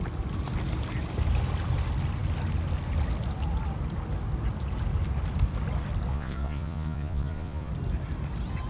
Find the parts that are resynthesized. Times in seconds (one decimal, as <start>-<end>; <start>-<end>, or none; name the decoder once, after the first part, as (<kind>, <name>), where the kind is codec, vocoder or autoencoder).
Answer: 6.1-7.7 (vocoder, Vocos)